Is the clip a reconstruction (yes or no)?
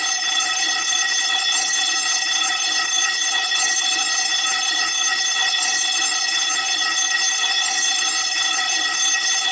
yes